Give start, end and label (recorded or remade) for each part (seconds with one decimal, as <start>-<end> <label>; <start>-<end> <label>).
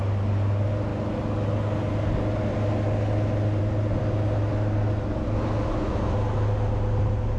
0.0-7.4 recorded